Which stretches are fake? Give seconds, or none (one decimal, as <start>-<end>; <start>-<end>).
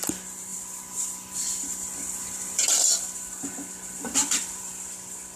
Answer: 0.0-5.4